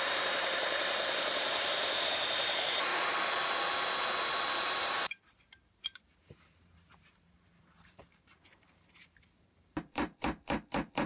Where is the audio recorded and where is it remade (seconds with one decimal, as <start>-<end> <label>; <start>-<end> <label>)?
0.0-2.9 remade; 2.9-4.7 recorded; 4.7-11.1 remade